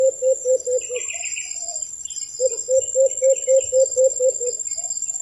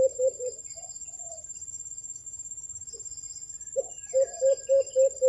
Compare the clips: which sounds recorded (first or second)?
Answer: first